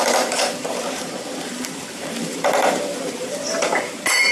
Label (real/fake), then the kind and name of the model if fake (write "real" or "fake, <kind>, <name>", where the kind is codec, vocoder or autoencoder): fake, vocoder, BigVGAN v2